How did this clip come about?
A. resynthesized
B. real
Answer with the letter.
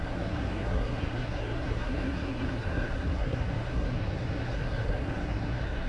A